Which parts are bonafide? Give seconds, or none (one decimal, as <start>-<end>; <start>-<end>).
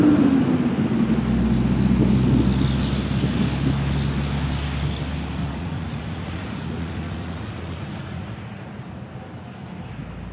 0.0-5.4; 8.9-10.3